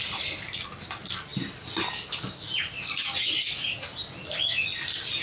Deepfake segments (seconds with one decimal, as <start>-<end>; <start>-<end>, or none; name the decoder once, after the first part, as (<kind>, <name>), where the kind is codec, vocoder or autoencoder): none

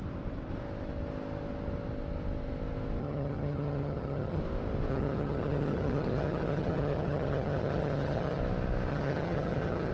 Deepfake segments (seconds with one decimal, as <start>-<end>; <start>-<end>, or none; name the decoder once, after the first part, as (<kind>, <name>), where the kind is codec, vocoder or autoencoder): 3.0-4.4 (vocoder, HiFi-GAN); 4.9-8.4; 8.9-9.9